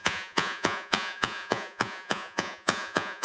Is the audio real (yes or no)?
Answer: no